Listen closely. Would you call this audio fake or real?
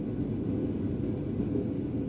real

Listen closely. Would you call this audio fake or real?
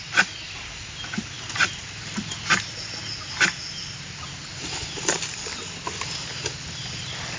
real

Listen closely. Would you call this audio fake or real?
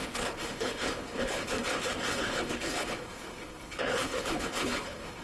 fake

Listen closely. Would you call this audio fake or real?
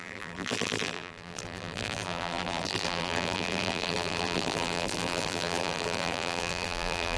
fake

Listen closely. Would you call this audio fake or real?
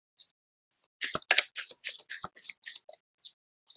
real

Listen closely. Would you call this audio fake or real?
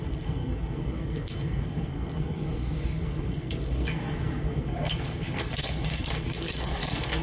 fake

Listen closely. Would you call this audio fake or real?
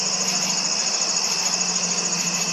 real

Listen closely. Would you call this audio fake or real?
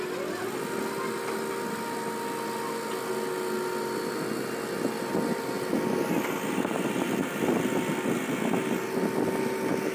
real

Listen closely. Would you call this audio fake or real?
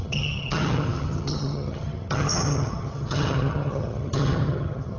fake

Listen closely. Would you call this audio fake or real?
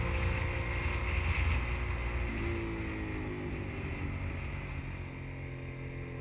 real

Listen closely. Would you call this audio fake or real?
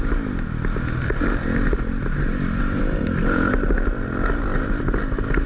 real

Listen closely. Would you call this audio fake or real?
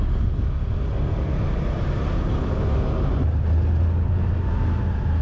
real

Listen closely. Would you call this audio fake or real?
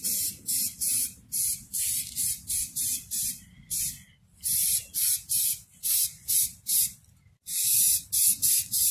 real